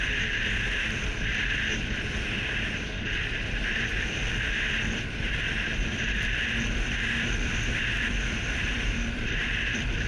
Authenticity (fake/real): fake